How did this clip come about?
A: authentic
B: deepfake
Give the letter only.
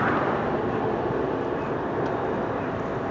A